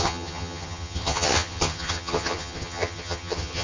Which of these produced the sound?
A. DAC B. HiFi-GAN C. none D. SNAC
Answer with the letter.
B